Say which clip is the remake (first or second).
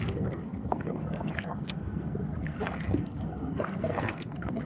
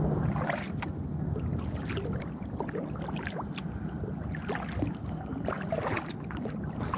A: first